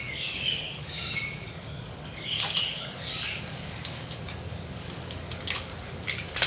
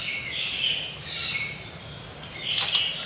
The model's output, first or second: first